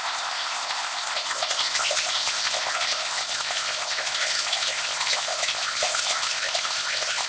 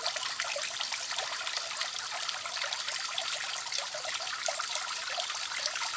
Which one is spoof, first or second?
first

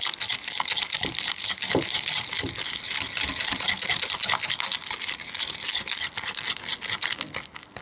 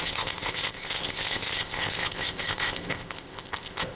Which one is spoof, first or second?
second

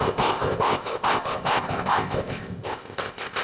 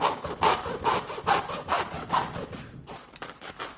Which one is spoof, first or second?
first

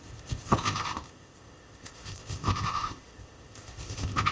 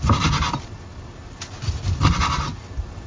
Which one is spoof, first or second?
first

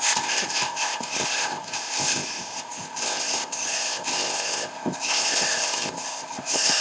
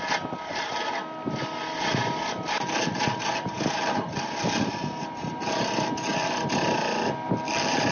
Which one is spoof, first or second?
first